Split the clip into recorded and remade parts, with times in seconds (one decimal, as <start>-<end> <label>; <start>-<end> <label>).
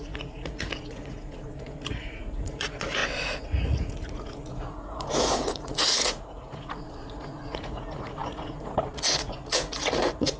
0.0-10.4 remade